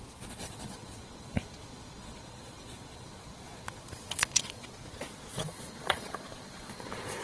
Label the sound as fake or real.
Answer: fake